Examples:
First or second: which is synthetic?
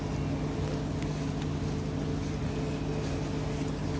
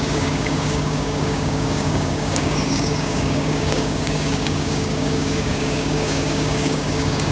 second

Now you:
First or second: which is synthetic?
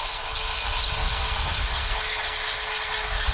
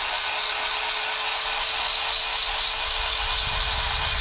first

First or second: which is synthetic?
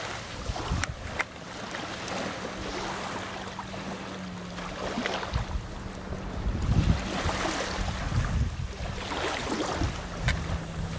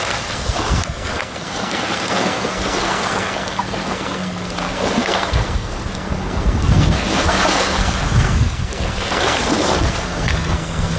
second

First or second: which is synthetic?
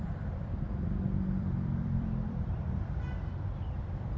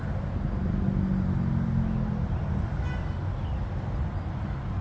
first